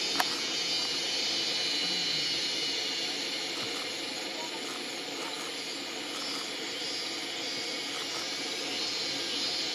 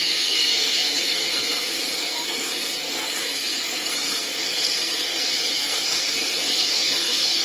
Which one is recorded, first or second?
first